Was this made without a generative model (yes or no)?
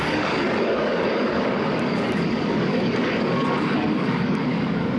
no